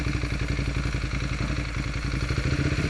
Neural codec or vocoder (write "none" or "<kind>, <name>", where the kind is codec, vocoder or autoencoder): none